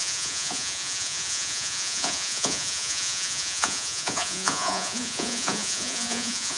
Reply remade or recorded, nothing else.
remade